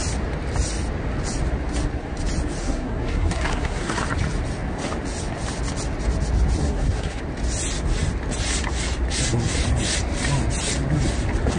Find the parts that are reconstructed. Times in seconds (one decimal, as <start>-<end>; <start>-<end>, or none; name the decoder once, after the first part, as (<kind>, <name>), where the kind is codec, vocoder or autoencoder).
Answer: 2.6-4.0 (codec, SNAC); 6.6-7.2